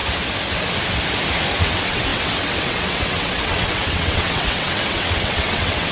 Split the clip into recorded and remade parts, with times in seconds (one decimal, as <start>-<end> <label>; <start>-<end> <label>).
0.0-1.6 recorded; 1.6-5.9 remade